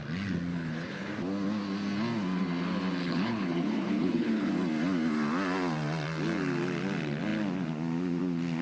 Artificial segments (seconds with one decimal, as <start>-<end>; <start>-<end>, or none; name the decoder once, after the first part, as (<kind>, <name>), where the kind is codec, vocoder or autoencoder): 0.5-1.1 (codec, HILCodec); 3.0-4.5